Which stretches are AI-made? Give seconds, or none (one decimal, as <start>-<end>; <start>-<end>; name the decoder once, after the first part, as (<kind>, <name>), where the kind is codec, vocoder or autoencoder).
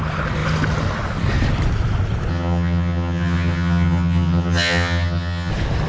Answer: 2.3-5.5 (vocoder, HiFi-GAN)